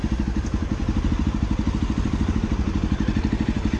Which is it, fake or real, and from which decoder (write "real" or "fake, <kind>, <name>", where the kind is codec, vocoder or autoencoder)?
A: real